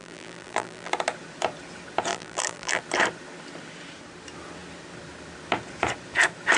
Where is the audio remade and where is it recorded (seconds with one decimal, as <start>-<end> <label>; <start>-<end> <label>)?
0.0-0.9 remade; 0.9-2.1 recorded; 2.1-2.8 remade; 2.8-6.6 recorded